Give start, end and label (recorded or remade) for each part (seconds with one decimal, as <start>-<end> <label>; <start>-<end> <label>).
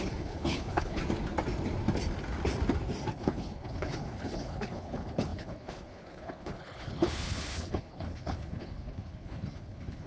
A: 0.0-1.0 remade; 1.0-3.1 recorded; 3.1-10.1 remade